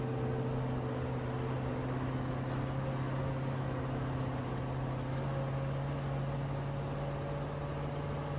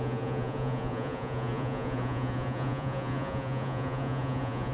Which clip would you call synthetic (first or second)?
second